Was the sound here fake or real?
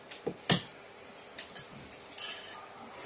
real